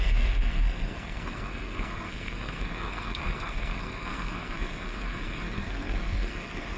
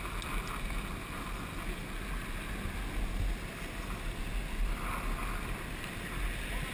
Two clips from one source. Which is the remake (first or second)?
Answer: first